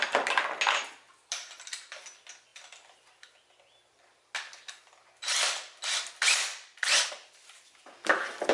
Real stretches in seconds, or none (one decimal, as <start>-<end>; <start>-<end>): 0.0-8.5